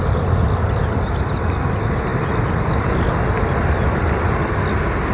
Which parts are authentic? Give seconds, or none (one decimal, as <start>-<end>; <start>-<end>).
0.0-5.1